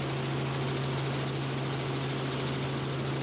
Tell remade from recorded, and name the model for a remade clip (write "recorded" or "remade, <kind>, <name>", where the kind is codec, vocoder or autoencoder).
recorded